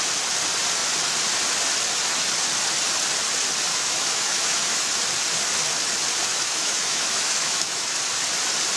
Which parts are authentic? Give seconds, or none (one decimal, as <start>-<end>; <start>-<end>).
0.0-3.7; 4.9-6.3; 8.0-8.8

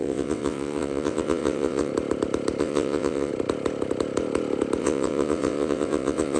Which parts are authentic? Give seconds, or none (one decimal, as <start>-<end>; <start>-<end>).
1.9-2.6; 3.3-4.8

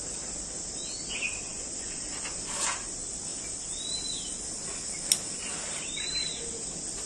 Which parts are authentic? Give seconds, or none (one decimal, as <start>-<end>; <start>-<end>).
0.0-1.5; 2.0-7.1

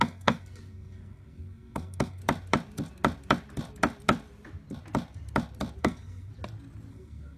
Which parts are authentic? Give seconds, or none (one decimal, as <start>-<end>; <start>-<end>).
2.2-5.8; 6.3-6.9

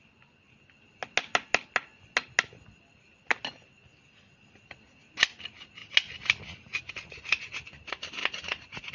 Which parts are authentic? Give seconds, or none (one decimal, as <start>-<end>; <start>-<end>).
0.0-8.9

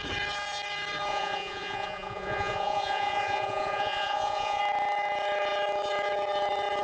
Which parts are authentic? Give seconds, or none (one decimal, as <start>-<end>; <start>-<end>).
0.0-1.1; 4.6-6.8

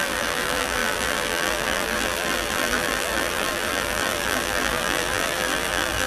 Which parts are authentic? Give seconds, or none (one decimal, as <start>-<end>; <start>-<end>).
none

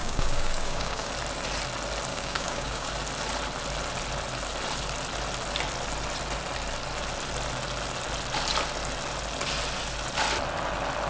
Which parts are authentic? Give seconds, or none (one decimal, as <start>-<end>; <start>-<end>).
1.1-2.1; 2.9-11.1